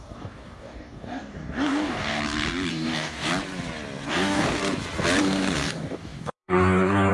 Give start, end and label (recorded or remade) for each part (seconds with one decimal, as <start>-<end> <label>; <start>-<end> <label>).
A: 0.0-2.2 remade; 2.2-2.7 recorded; 2.7-3.3 remade; 3.3-4.1 recorded; 4.1-4.6 remade; 4.6-5.2 recorded; 5.2-7.1 remade